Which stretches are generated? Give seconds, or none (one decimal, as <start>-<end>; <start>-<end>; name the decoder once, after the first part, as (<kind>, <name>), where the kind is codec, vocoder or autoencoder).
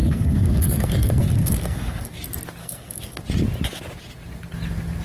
0.0-2.2 (codec, SNAC); 2.6-3.2